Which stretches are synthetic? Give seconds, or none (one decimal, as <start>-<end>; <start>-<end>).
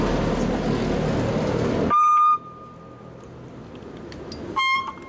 none